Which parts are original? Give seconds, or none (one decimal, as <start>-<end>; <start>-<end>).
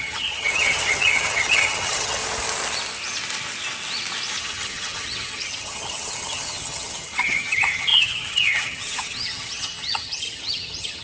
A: 2.2-4.4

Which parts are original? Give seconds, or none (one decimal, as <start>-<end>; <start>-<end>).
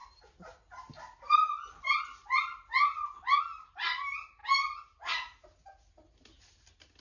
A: 0.0-7.0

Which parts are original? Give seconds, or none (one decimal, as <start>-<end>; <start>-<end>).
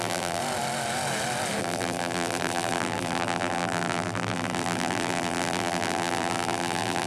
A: 0.4-1.6